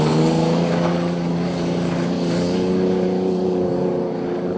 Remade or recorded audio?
remade